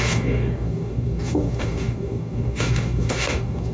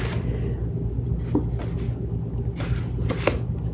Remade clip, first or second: first